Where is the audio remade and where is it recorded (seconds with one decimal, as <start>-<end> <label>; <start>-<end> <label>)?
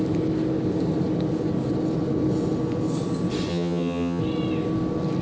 0.0-3.5 recorded; 3.5-4.2 remade; 4.2-5.2 recorded